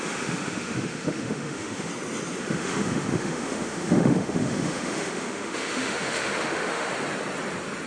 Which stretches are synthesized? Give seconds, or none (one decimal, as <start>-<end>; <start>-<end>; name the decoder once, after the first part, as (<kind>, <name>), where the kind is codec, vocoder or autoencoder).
0.0-1.9 (autoencoder, DAC-VAE); 2.4-6.9